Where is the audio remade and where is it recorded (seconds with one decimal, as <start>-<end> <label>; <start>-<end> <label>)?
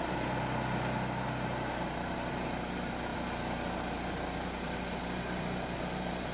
0.0-6.3 recorded